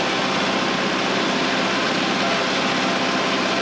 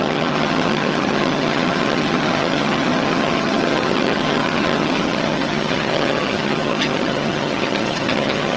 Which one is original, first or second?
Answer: first